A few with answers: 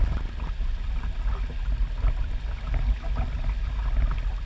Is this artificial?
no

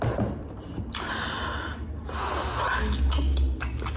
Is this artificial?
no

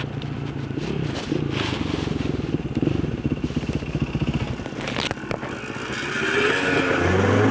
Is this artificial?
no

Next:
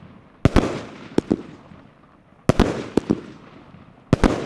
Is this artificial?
no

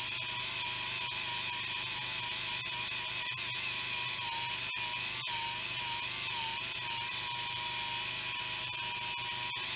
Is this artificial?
no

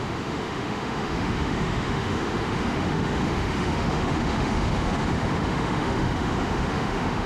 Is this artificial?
yes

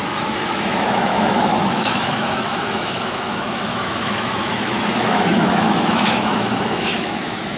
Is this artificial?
yes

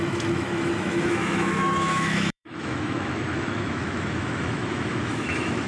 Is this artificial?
yes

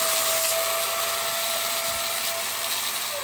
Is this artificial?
no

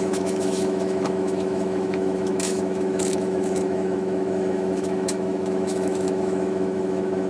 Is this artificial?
yes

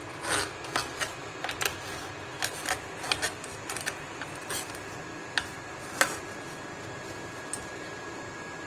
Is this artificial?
no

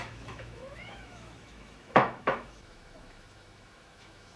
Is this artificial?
yes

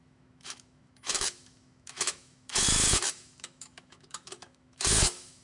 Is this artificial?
yes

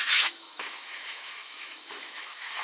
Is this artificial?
yes